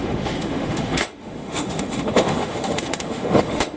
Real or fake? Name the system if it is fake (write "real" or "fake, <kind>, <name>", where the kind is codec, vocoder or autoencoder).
fake, autoencoder, DAC-VAE